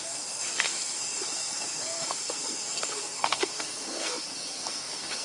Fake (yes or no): yes